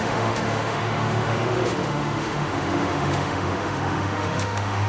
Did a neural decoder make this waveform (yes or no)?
yes